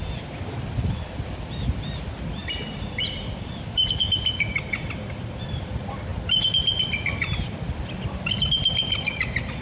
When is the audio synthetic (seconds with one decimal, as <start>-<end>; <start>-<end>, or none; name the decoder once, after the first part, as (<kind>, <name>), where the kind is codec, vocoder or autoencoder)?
0.0-9.6 (vocoder, BigVGAN v2)